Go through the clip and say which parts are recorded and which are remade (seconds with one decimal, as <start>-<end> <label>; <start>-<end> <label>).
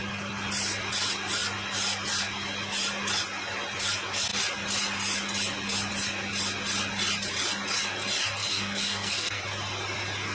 0.0-8.4 recorded; 8.4-9.4 remade; 9.4-10.3 recorded